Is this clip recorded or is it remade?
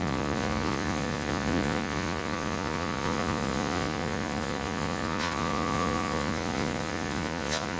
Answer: remade